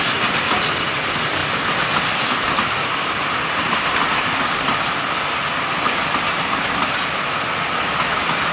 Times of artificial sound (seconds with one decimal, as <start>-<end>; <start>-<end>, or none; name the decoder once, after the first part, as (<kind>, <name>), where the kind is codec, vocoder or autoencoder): none